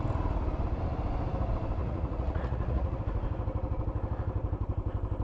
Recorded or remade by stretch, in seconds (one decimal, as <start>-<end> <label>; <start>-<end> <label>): 0.0-1.8 recorded; 1.8-3.0 remade; 3.0-5.2 recorded